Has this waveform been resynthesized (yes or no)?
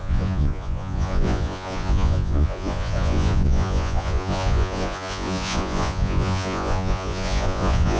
yes